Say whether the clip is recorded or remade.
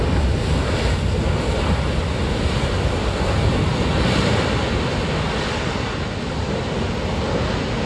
recorded